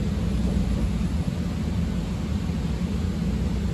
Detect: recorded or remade recorded